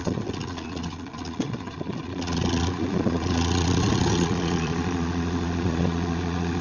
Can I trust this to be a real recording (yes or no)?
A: no